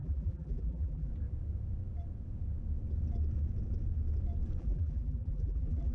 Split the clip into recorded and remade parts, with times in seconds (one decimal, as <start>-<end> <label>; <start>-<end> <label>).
0.0-1.1 remade; 1.1-4.6 recorded; 4.6-5.9 remade